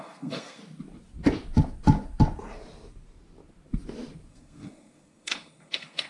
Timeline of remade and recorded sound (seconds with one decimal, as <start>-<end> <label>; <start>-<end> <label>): 0.0-0.6 remade; 0.6-4.3 recorded; 4.3-6.1 remade